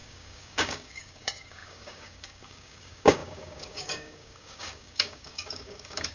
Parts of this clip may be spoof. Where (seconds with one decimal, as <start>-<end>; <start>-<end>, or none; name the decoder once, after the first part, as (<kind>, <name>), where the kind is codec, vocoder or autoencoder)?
0.0-6.1 (codec, DAC)